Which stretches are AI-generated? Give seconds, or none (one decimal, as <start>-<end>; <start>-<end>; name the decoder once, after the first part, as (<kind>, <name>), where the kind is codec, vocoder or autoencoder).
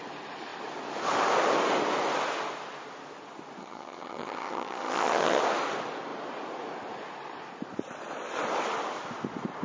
3.6-5.4 (vocoder, HiFi-GAN)